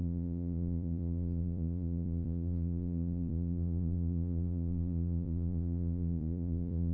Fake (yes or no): yes